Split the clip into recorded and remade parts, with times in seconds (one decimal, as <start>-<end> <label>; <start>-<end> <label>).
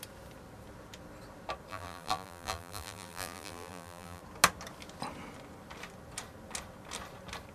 0.0-1.7 recorded; 1.7-4.2 remade; 4.2-7.5 recorded